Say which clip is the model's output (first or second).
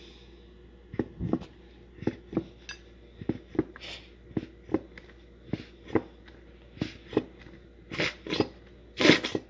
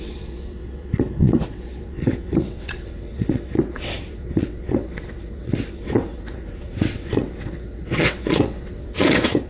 second